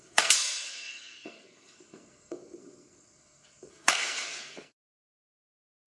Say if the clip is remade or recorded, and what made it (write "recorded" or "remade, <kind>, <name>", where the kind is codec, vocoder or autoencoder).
remade, codec, SNAC